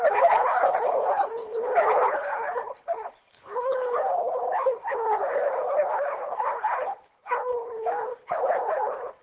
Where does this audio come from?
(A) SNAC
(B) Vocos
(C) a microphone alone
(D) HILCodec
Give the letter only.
D